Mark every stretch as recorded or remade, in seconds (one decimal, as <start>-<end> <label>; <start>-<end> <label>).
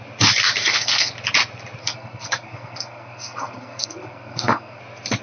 0.0-0.6 recorded; 0.6-1.1 remade; 1.1-1.8 recorded; 1.8-4.8 remade; 4.8-5.2 recorded